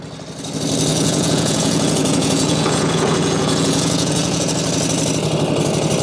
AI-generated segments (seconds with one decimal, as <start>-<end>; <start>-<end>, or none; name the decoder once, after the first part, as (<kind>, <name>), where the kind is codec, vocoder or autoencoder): 0.9-4.5 (vocoder, Vocos)